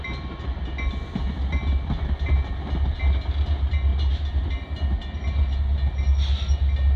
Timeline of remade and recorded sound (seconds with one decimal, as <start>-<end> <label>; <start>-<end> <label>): 0.0-7.0 recorded